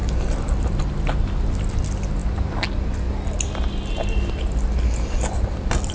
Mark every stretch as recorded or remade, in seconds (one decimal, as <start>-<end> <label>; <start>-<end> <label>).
0.0-5.9 recorded